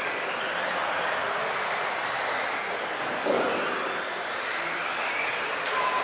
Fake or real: real